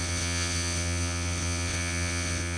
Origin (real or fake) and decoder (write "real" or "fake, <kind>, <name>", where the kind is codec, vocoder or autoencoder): fake, vocoder, WaveNeXt